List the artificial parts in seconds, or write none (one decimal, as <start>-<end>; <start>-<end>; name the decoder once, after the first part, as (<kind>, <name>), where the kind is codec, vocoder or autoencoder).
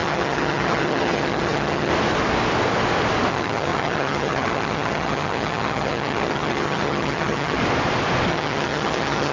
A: 0.0-1.9 (vocoder, HiFi-GAN); 3.3-7.6; 8.3-9.3